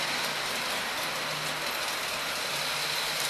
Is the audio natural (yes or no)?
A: yes